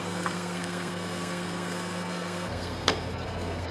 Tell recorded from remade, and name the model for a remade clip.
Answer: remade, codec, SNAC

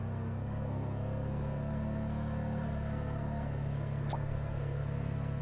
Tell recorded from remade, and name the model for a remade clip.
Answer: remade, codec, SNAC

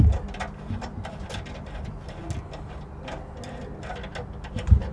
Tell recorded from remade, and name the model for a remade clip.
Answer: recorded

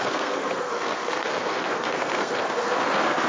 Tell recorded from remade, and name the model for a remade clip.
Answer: remade, codec, SNAC